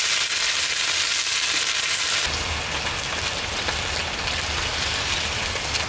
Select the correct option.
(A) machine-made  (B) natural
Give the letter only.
B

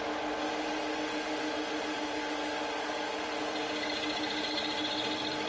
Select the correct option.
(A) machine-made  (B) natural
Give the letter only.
B